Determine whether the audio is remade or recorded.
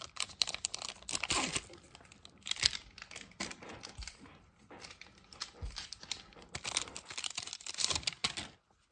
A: recorded